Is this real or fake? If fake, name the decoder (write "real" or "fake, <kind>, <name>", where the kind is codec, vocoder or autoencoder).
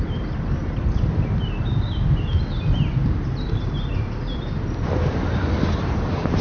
fake, vocoder, BigVGAN v2